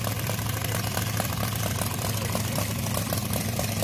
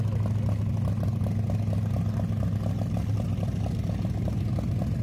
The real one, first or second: second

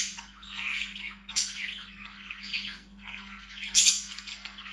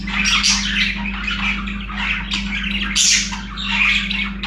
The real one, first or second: second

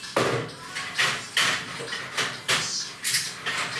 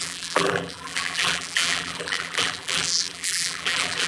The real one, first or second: first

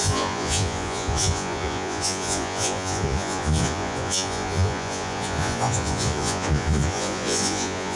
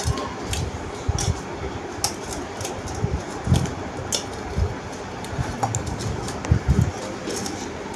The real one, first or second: second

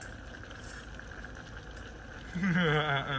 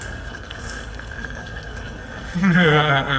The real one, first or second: first